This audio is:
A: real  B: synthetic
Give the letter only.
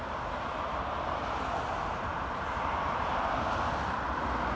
B